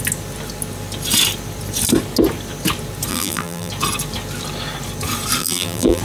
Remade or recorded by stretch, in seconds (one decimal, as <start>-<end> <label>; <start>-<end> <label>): 0.0-3.1 recorded; 3.1-3.7 remade; 3.7-5.4 recorded; 5.4-6.0 remade